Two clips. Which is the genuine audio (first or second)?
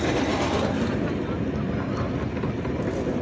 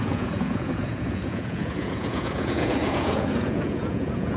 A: first